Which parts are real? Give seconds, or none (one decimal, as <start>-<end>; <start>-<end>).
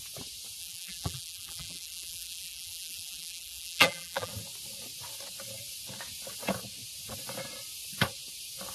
0.0-0.6; 4.3-8.7